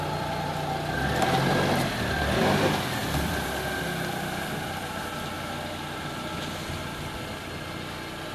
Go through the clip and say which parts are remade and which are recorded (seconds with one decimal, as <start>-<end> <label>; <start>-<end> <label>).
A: 0.0-8.3 recorded